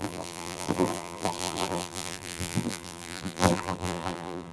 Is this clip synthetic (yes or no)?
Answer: yes